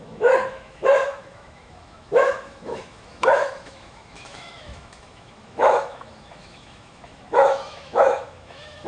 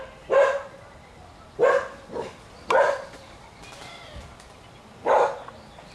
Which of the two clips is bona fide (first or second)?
second